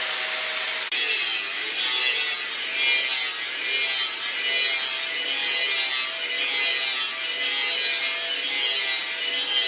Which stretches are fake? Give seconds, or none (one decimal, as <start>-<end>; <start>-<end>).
none